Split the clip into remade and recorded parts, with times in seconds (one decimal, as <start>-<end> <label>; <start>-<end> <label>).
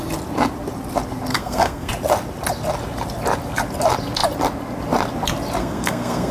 0.0-1.3 recorded; 1.3-1.9 remade; 1.9-5.6 recorded; 5.6-6.3 remade